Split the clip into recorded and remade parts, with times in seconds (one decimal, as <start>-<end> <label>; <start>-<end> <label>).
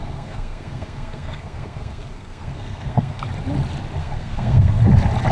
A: 0.0-3.2 remade; 3.2-4.0 recorded; 4.0-4.8 remade; 4.8-5.3 recorded